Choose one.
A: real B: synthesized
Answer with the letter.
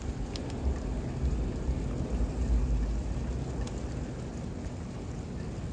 A